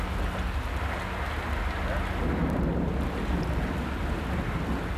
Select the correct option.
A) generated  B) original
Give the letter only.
B